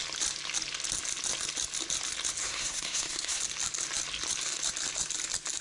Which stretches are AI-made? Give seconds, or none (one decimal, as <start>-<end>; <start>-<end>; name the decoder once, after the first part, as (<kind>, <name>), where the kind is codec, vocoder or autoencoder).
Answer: 2.4-3.4 (codec, SNAC)